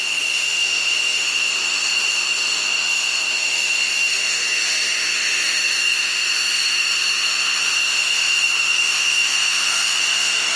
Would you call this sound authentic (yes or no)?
no